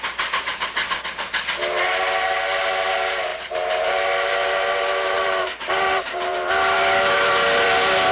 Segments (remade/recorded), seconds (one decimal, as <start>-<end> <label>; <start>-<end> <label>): 0.0-3.3 recorded; 3.3-6.5 remade; 6.5-8.1 recorded